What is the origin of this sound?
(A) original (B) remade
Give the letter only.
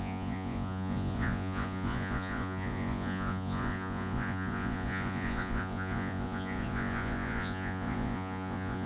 B